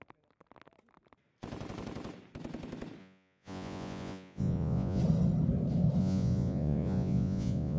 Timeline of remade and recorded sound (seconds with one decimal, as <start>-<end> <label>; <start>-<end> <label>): 0.0-3.0 recorded; 3.0-5.0 remade; 5.0-6.0 recorded; 6.0-7.8 remade